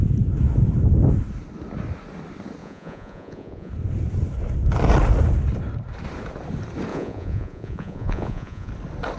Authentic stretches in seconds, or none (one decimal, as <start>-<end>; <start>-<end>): 0.0-2.6; 3.7-6.9; 8.7-9.2